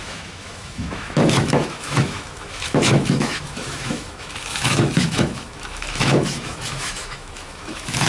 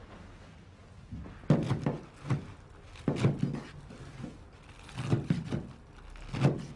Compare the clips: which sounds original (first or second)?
second